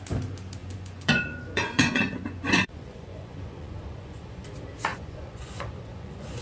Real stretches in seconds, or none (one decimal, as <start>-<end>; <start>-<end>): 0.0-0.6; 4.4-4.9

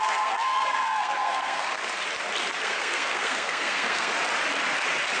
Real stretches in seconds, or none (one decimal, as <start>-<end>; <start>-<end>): 1.8-2.6; 4.1-5.2

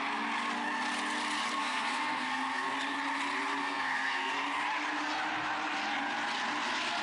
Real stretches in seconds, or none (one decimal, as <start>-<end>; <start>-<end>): 0.0-1.6; 2.7-3.6; 4.3-7.0